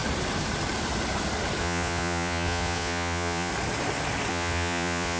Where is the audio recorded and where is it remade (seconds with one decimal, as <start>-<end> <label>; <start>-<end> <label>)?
0.0-1.6 recorded; 1.6-3.5 remade; 3.5-4.3 recorded; 4.3-5.2 remade

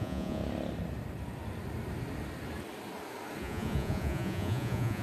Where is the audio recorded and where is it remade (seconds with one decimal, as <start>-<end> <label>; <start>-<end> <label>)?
0.0-0.4 remade; 0.4-3.4 recorded; 3.4-5.0 remade

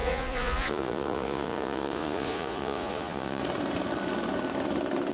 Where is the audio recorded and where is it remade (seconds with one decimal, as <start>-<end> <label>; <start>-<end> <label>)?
0.0-3.4 remade; 3.4-5.1 recorded

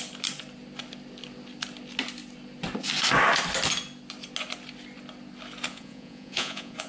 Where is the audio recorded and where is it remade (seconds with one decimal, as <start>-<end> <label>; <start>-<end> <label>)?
0.0-5.7 recorded; 5.7-6.9 remade

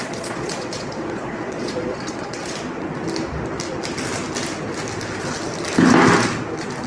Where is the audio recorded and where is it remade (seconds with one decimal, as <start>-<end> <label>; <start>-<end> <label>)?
0.0-2.5 remade; 2.5-6.9 recorded